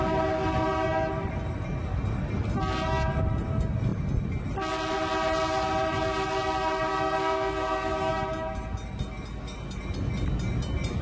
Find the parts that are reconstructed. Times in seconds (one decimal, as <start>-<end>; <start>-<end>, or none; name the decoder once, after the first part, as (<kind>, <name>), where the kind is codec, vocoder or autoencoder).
6.9-8.1 (codec, SNAC)